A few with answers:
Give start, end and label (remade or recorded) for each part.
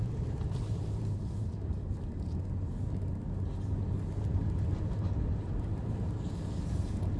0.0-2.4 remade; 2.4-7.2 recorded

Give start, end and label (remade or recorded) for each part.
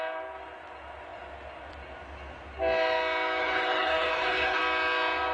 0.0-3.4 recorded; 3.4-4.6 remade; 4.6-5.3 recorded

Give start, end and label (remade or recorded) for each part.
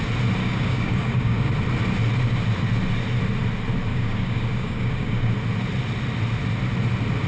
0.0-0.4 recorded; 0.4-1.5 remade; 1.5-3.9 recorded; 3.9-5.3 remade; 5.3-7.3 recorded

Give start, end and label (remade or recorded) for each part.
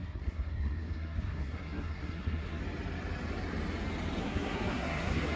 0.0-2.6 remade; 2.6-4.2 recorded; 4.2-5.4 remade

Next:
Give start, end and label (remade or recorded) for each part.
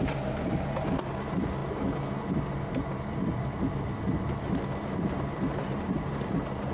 0.0-5.5 recorded; 5.5-6.7 remade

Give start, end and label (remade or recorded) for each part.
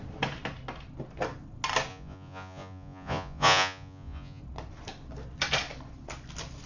0.0-1.9 recorded; 1.9-4.4 remade; 4.4-6.7 recorded